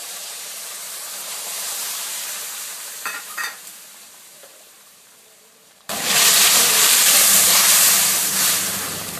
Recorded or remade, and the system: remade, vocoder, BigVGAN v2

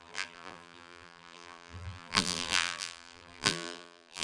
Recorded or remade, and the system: remade, vocoder, BigVGAN v2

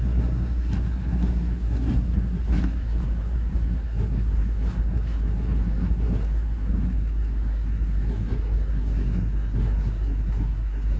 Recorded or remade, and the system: remade, codec, SNAC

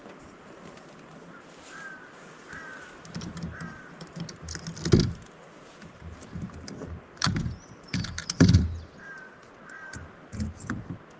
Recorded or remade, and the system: recorded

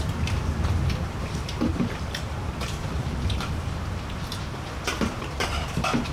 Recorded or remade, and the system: remade, vocoder, BigVGAN v2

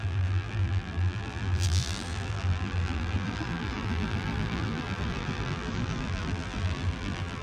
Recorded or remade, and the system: remade, vocoder, BigVGAN v2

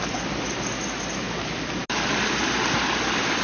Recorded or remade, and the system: recorded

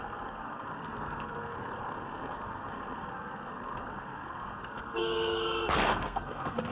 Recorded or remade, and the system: remade, codec, SNAC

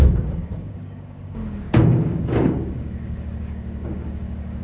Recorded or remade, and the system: remade, codec, DAC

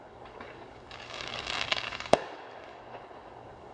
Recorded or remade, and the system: remade, codec, DAC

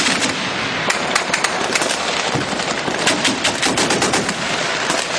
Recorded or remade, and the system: recorded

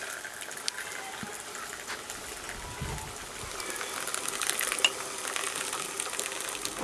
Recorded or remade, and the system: recorded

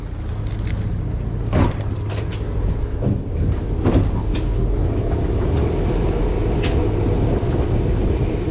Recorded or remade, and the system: recorded